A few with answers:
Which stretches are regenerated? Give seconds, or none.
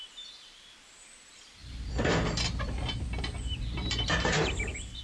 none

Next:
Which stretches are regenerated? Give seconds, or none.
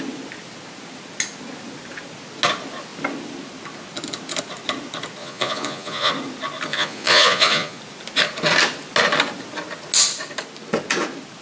5.2-6.1 (vocoder, Vocos); 6.7-7.8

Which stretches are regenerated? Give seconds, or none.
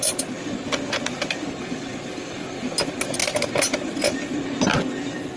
none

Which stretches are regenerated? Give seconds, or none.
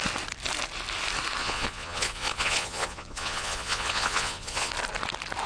1.4-4.7 (vocoder, Vocos)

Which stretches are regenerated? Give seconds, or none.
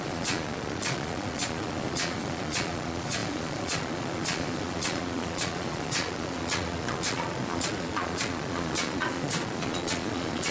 0.0-10.5 (vocoder, Vocos)